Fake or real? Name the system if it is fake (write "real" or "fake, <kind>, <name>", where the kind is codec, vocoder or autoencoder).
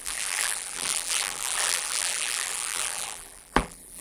fake, vocoder, BigVGAN v2